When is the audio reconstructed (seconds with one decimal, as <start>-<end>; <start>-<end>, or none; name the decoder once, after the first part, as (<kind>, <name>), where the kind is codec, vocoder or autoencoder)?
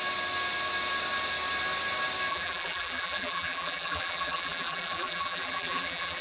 2.3-6.2 (vocoder, BigVGAN v2)